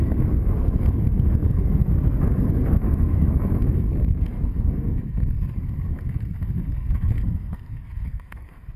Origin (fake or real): fake